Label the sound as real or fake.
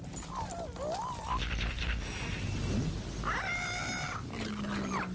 real